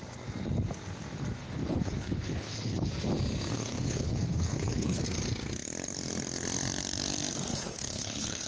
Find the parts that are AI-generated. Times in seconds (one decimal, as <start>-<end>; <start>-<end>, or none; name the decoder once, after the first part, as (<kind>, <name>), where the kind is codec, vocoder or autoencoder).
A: 1.4-2.9 (codec, HILCodec); 3.5-5.0; 7.5-8.5